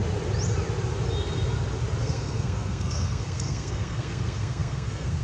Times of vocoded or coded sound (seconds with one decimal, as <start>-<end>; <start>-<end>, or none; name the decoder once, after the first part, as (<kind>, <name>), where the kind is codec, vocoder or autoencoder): 2.0-5.2 (codec, SNAC)